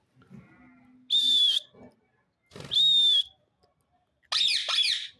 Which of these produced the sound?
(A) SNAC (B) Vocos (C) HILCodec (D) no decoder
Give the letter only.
D